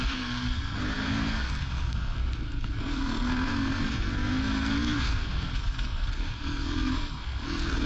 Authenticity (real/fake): fake